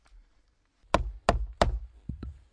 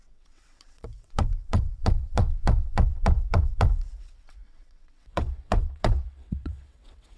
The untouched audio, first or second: first